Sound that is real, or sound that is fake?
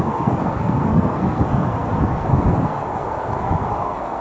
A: fake